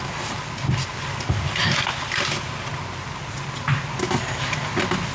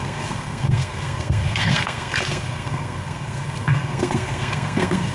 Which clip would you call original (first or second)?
first